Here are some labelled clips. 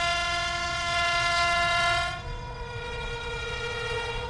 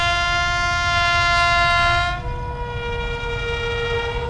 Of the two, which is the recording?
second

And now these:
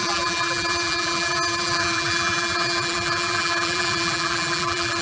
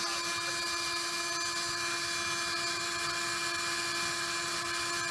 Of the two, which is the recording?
second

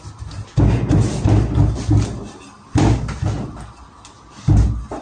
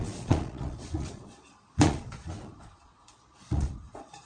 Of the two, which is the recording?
first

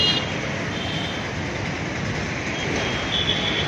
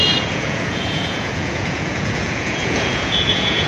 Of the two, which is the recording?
first